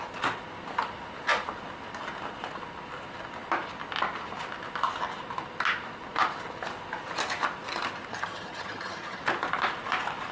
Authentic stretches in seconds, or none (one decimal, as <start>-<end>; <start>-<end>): 0.0-8.1; 9.2-10.3